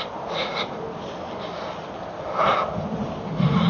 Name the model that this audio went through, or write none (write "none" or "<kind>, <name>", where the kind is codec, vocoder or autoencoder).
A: none